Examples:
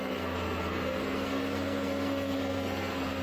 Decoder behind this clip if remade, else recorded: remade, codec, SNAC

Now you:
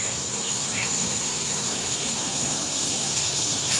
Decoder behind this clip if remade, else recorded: remade, codec, SNAC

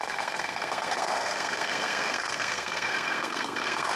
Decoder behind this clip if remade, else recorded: remade, codec, SNAC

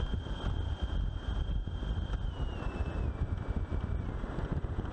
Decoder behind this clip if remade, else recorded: recorded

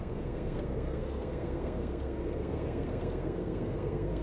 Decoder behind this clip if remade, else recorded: remade, codec, SNAC